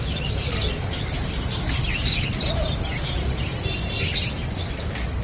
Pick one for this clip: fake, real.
fake